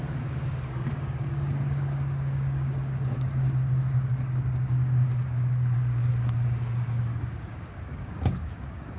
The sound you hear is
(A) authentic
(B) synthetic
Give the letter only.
B